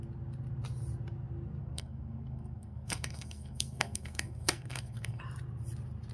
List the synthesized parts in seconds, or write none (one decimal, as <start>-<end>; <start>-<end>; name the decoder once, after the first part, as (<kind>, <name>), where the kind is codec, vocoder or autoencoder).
1.6-5.2 (codec, SNAC)